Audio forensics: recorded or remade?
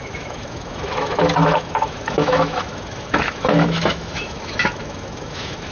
remade